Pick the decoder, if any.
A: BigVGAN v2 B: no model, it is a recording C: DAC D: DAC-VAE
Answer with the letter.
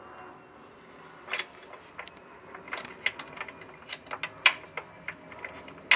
B